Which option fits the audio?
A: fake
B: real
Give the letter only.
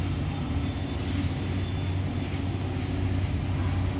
B